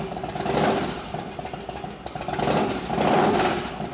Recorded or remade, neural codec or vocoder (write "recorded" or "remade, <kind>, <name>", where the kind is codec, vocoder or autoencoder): recorded